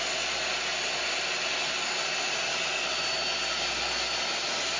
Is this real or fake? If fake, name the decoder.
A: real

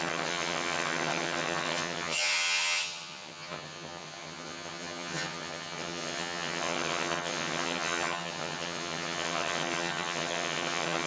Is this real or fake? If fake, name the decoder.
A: fake, vocoder, HiFi-GAN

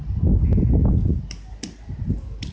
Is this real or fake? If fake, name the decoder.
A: real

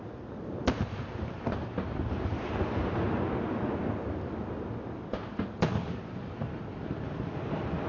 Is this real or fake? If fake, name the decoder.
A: real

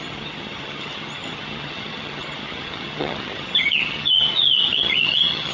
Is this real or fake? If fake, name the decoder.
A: fake, vocoder, HiFi-GAN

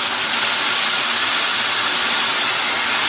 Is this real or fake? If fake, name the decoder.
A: real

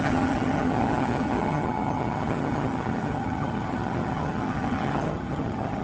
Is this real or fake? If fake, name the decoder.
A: fake, vocoder, HiFi-GAN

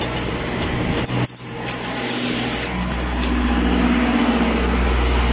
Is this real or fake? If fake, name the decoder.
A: real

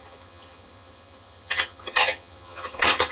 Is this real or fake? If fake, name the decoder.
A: fake, vocoder, HiFi-GAN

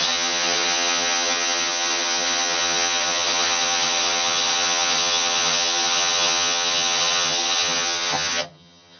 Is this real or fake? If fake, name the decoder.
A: fake, vocoder, HiFi-GAN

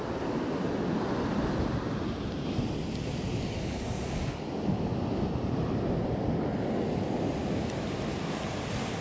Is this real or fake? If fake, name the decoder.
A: real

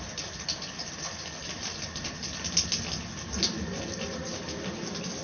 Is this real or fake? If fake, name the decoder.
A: real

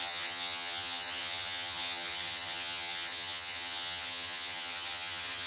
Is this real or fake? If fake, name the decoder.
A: fake, vocoder, HiFi-GAN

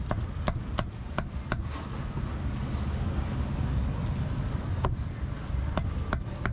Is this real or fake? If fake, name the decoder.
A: real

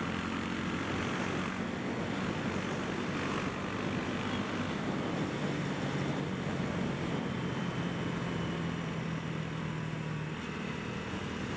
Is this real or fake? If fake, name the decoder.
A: real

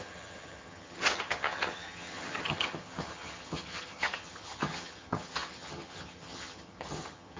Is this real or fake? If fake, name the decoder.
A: fake, vocoder, HiFi-GAN